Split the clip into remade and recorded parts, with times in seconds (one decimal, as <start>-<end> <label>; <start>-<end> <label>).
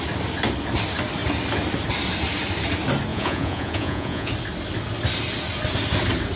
0.0-3.1 recorded; 3.1-4.3 remade; 4.3-6.4 recorded